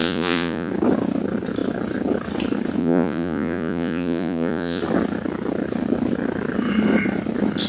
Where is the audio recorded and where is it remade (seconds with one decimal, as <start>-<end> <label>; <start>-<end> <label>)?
0.0-0.7 remade; 0.7-2.8 recorded; 2.8-4.8 remade; 4.8-7.7 recorded

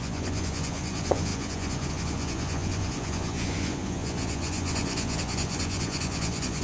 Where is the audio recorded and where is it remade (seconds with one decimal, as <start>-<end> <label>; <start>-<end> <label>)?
0.0-6.6 remade

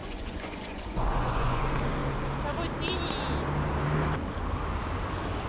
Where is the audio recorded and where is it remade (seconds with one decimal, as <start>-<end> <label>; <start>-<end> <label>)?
0.0-1.6 remade; 1.6-5.5 recorded